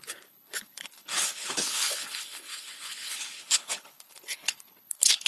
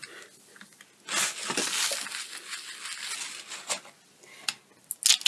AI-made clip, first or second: first